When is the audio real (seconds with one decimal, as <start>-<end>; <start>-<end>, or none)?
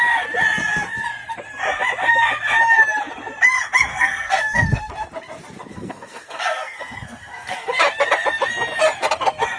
0.0-3.9; 4.9-5.7; 7.8-9.6